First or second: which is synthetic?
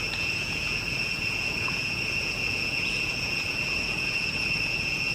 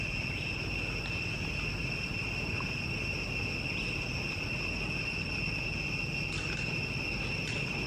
first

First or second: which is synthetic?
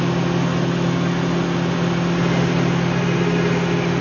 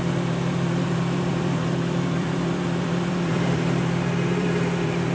second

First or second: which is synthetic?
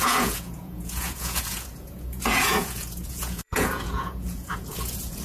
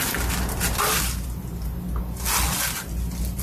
first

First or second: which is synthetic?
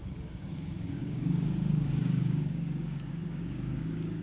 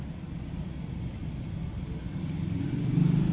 first